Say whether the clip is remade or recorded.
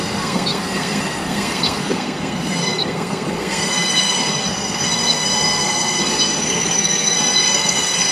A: remade